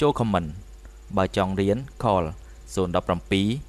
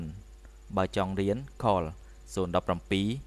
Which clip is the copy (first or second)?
first